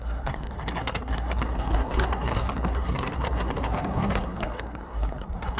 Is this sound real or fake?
fake